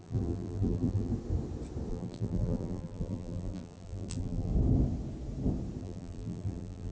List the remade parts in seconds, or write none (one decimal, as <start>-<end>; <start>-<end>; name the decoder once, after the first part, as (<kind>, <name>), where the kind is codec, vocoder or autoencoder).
0.0-1.1 (vocoder, BigVGAN v2); 1.9-4.5; 5.8-6.9